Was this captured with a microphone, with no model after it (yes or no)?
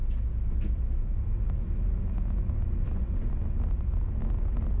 yes